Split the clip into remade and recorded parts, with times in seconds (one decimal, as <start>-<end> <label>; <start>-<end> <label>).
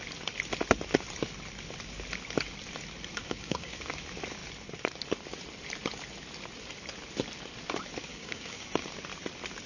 0.0-3.2 recorded; 3.2-3.9 remade; 3.9-8.1 recorded; 8.1-8.7 remade; 8.7-9.7 recorded